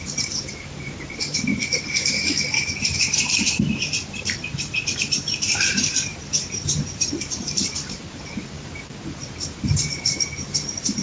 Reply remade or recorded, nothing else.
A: remade